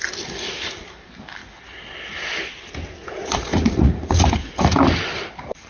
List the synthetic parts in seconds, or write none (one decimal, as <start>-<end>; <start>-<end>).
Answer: 3.0-4.7